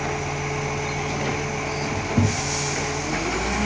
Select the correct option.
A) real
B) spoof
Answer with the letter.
A